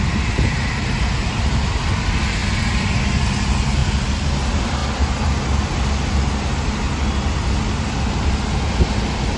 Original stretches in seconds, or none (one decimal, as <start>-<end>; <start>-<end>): 0.0-9.4